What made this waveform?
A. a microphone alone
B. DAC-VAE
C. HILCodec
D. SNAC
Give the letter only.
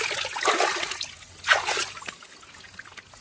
A